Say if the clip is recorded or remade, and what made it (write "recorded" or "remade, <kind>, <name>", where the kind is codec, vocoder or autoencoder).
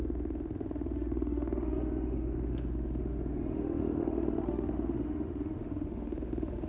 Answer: remade, autoencoder, DAC-VAE